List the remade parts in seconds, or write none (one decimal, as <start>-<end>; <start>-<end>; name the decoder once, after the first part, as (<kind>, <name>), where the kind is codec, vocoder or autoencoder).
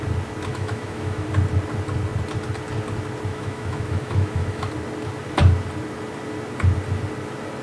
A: 0.5-1.3 (autoencoder, DAC-VAE); 3.3-4.7